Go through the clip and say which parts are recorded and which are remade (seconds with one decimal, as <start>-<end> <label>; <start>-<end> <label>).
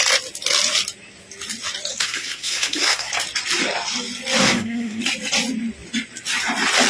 0.0-1.9 recorded; 1.9-3.1 remade; 3.1-4.4 recorded; 4.4-5.0 remade; 5.0-6.9 recorded